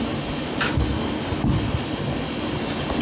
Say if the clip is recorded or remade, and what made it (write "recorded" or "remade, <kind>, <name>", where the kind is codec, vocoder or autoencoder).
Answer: recorded